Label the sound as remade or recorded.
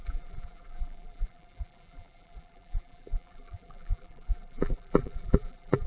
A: remade